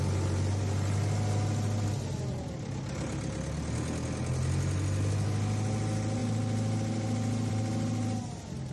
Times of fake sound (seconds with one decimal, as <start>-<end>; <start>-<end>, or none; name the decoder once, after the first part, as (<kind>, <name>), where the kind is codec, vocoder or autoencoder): none